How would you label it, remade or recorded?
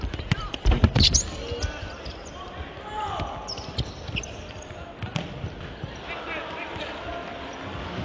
recorded